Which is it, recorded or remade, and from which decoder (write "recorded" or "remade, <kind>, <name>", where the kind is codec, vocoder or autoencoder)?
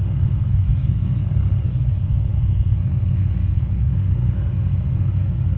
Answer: remade, codec, SNAC